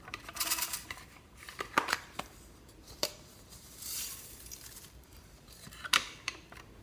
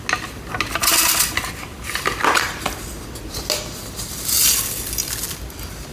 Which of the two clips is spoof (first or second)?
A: first